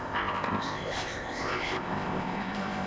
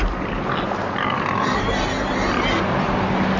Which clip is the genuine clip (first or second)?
second